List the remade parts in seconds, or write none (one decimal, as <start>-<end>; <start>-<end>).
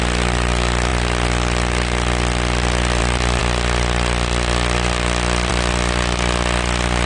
none